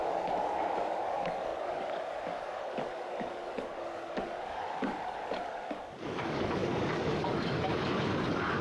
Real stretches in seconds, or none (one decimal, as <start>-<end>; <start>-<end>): none

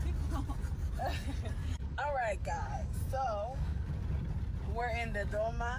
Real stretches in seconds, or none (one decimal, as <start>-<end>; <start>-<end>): 0.0-1.6; 3.9-4.8